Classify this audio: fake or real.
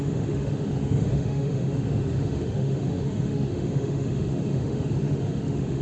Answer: fake